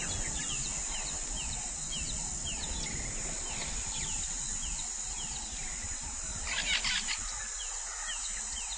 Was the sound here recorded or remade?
recorded